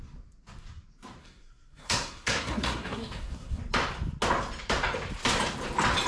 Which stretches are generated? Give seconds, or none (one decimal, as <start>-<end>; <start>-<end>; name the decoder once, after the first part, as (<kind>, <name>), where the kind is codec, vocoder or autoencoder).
1.2-3.6 (codec, SNAC)